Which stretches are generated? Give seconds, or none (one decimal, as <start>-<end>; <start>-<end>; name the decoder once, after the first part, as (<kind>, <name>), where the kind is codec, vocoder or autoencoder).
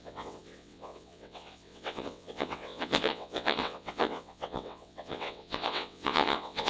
0.0-6.7 (vocoder, WaveNeXt)